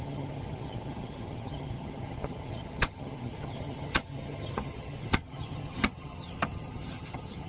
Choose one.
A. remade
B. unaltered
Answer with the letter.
A